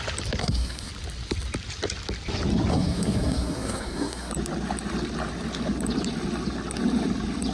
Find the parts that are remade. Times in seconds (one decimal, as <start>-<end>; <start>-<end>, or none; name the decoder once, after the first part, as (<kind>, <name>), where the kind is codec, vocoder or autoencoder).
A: 0.4-0.9 (codec, SNAC); 2.7-4.3